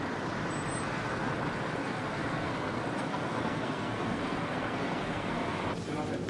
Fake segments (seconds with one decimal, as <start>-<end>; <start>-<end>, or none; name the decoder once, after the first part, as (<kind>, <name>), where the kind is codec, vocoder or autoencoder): 0.8-1.3 (codec, SNAC); 1.8-5.6